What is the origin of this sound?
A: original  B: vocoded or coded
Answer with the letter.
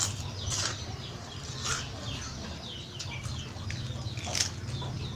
A